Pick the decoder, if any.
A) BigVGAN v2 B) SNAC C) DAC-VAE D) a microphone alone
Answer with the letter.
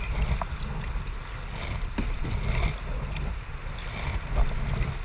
D